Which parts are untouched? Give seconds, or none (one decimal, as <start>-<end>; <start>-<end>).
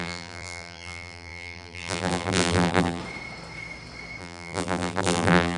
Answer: 3.0-4.2